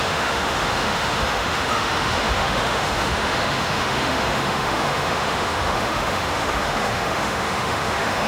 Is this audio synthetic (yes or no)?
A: yes